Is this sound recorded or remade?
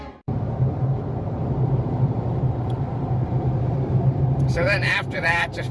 remade